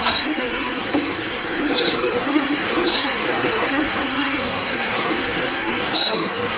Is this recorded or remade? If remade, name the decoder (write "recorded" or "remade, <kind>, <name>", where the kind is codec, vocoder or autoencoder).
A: remade, codec, SNAC